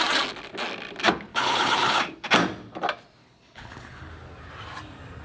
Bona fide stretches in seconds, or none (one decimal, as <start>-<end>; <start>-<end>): 0.0-1.3; 2.0-3.2; 4.1-5.2